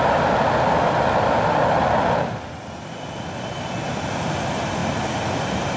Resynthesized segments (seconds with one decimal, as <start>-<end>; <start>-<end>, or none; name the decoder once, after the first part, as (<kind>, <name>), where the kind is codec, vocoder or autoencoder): none